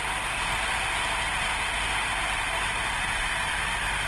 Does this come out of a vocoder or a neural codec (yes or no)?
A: no